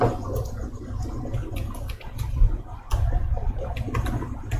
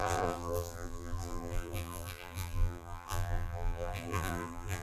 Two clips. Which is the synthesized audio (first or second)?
second